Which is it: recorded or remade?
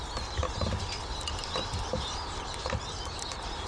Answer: recorded